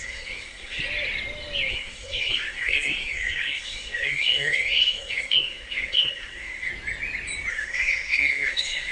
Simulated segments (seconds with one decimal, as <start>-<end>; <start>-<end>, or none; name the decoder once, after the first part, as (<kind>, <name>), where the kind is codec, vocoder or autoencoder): 0.0-0.8 (codec, SNAC); 1.7-6.7; 7.5-8.9